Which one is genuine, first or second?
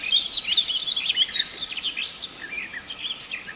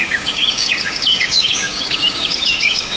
first